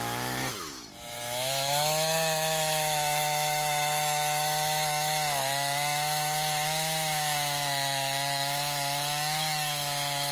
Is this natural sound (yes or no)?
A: no